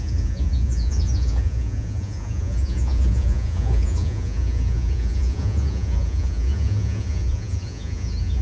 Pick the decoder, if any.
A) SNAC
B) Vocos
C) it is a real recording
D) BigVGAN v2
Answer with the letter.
B